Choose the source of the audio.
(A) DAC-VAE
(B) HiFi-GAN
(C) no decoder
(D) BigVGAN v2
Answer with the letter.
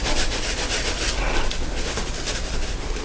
C